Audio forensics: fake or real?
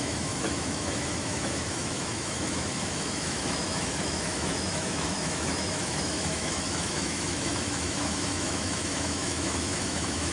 fake